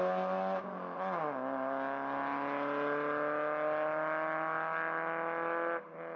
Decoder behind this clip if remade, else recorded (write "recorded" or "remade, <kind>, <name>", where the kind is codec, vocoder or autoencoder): recorded